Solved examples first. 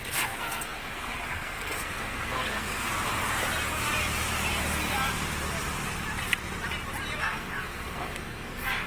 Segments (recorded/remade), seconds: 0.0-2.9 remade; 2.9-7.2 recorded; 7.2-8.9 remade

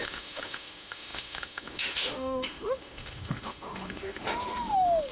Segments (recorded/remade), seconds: 0.0-5.1 remade

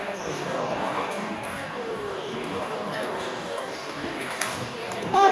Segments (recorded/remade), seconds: 0.0-5.3 remade

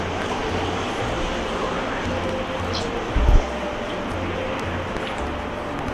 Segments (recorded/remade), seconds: 0.0-5.9 recorded

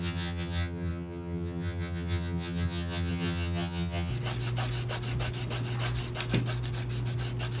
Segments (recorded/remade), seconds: 0.0-4.1 remade; 4.1-7.6 recorded

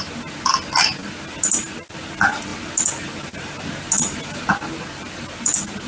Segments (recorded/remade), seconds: 0.0-5.9 recorded

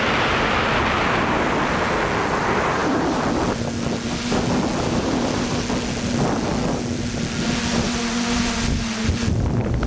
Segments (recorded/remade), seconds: 0.0-9.9 recorded

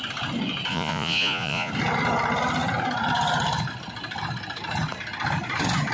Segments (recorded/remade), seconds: 0.0-0.7 recorded; 0.7-1.7 remade; 1.7-5.9 recorded